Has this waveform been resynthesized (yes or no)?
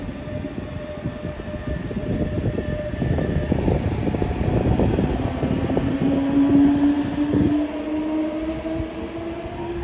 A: no